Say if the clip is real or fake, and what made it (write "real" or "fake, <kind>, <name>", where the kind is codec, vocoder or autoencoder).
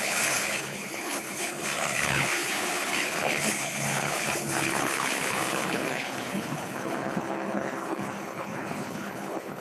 fake, codec, HILCodec